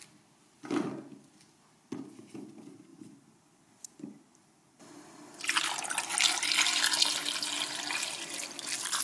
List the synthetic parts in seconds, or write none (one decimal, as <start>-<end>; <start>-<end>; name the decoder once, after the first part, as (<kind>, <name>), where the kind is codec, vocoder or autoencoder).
0.0-0.9 (vocoder, BigVGAN v2)